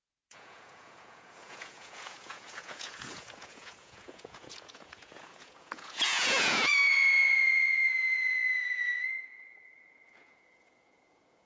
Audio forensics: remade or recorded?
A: remade